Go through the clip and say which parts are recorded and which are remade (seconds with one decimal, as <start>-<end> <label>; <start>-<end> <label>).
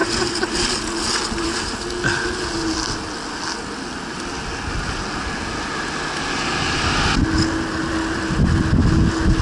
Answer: 0.0-0.5 remade; 0.5-9.4 recorded